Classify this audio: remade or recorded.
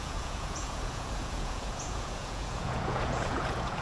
remade